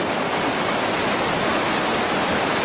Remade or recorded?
recorded